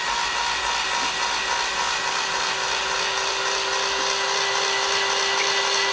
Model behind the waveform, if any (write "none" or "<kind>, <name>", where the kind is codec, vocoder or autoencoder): none